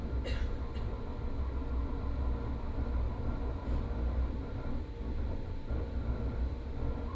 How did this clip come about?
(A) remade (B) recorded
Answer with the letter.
B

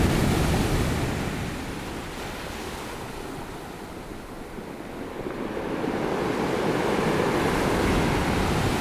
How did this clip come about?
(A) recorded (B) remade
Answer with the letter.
A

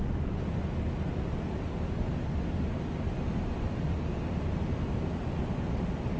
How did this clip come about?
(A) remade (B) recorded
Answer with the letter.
B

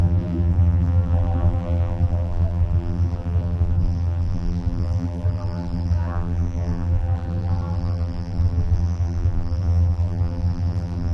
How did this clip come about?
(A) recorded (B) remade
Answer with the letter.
B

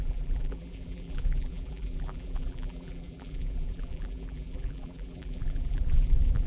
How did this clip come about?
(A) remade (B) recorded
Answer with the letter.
A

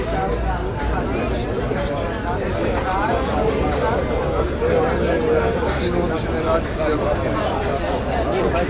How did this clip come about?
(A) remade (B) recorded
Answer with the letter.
B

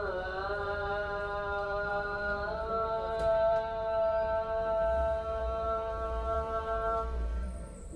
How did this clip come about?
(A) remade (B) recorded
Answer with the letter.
A